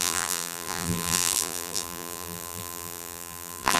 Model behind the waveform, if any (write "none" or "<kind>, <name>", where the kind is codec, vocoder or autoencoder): vocoder, BigVGAN v2